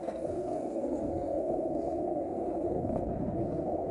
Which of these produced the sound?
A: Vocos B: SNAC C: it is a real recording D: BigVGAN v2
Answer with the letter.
B